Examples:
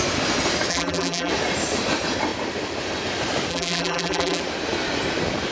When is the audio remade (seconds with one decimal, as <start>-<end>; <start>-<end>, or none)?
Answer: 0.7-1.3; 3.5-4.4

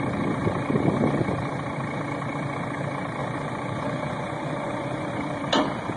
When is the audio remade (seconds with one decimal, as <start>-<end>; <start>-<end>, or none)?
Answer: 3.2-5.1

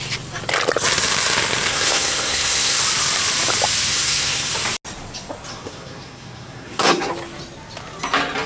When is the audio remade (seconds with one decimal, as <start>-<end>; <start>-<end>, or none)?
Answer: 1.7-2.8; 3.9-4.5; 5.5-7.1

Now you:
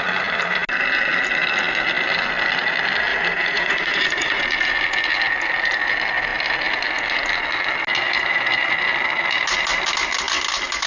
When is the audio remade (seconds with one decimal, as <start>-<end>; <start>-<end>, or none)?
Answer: 3.1-4.4

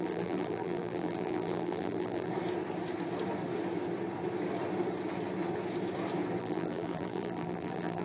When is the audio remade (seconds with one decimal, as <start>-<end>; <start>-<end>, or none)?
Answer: 0.0-2.3; 6.4-8.0

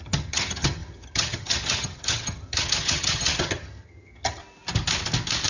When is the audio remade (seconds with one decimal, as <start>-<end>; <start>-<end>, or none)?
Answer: 0.0-4.4

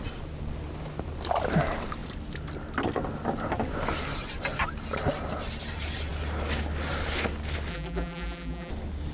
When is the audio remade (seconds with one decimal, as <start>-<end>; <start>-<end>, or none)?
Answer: 7.7-8.7

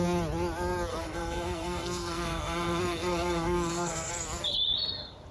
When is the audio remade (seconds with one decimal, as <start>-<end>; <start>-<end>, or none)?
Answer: 0.9-4.1